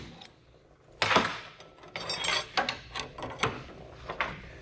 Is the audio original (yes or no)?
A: yes